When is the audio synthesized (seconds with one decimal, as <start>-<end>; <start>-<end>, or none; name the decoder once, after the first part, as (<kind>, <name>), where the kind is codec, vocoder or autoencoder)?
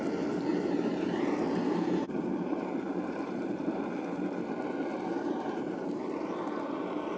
0.5-3.9 (vocoder, BigVGAN v2); 4.9-6.3